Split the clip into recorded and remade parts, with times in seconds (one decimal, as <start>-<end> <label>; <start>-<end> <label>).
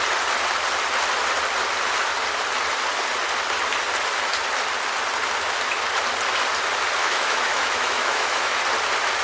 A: 0.0-7.0 recorded; 7.0-8.6 remade; 8.6-9.2 recorded